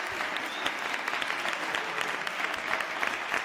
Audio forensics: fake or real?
real